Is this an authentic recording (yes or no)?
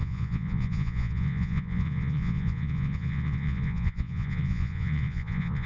no